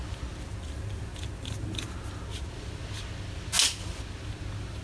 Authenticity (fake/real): real